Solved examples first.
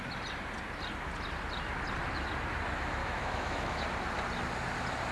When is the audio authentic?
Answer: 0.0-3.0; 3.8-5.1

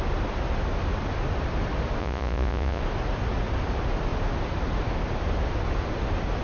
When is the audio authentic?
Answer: 0.0-2.0; 2.8-6.4

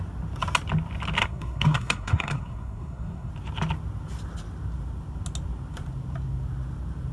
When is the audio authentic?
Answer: 0.0-1.2; 3.3-7.1

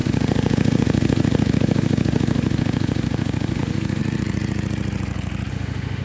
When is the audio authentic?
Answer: 4.0-5.5

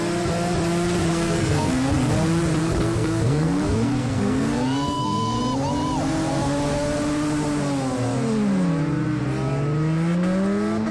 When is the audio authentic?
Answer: 0.0-1.1; 2.1-2.6; 5.4-10.9

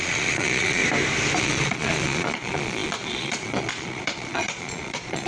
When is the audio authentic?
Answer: 0.8-1.4

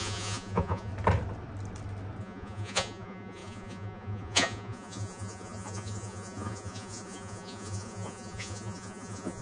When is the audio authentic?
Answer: 0.9-2.2